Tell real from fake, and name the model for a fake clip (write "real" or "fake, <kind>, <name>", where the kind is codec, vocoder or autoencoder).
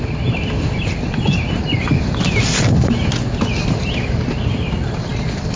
real